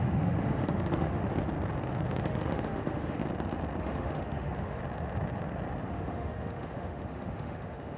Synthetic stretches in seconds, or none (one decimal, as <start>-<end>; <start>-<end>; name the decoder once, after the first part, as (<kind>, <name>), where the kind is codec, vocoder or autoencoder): 0.0-1.2 (autoencoder, DAC-VAE); 2.2-3.2; 3.8-4.8; 5.9-8.0